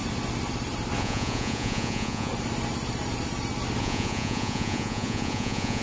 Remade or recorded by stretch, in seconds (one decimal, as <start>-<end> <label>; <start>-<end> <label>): 0.0-1.0 recorded; 1.0-2.3 remade; 2.3-3.8 recorded; 3.8-5.8 remade